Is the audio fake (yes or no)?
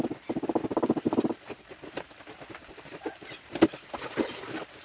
no